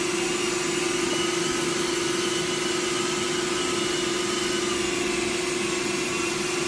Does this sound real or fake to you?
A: real